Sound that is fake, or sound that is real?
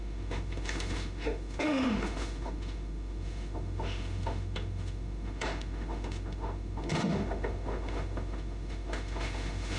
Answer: fake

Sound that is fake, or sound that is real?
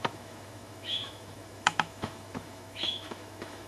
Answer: fake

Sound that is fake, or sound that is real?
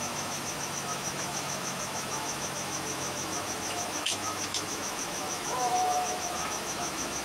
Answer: fake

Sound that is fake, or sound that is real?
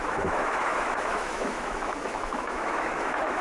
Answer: fake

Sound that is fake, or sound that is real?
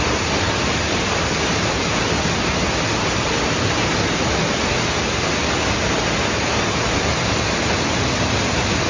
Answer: real